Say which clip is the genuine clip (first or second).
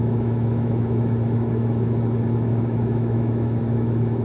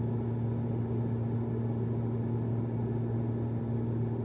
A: second